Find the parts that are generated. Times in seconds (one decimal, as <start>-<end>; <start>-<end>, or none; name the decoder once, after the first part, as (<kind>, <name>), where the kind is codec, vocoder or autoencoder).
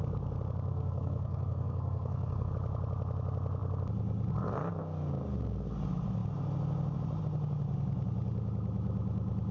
0.7-2.5 (codec, SNAC)